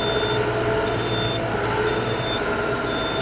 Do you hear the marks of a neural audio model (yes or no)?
no